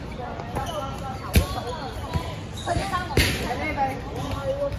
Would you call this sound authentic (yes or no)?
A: yes